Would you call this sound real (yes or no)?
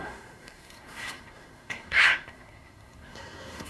no